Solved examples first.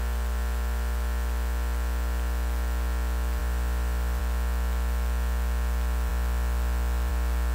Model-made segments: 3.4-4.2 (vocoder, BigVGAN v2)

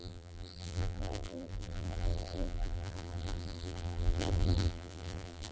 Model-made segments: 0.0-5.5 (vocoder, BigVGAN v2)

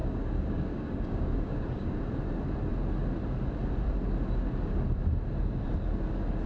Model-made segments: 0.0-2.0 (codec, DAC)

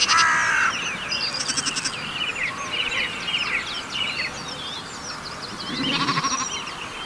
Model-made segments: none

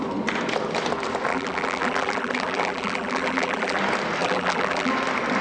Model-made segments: 1.3-3.8 (vocoder, BigVGAN v2); 4.2-4.9

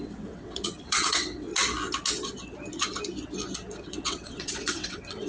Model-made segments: 0.0-1.5 (vocoder, WaveNeXt); 3.8-5.3

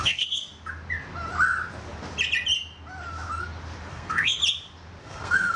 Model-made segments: 0.0-0.5 (codec, SNAC); 3.9-4.4; 5.0-5.6

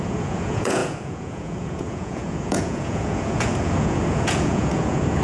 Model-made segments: 0.0-5.2 (vocoder, Vocos)